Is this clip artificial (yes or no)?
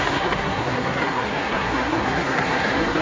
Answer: yes